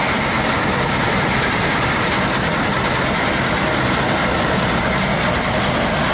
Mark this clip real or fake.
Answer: real